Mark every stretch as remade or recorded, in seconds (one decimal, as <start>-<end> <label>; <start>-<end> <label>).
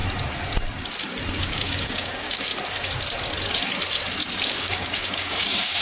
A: 0.0-1.4 recorded; 1.4-2.5 remade; 2.5-4.5 recorded; 4.5-5.8 remade